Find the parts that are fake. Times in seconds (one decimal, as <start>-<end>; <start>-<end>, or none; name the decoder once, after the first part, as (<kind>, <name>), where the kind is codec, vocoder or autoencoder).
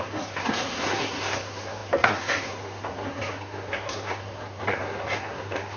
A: 0.0-5.8 (codec, SNAC)